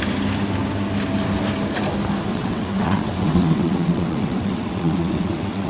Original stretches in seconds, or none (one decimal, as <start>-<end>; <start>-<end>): 0.0-2.3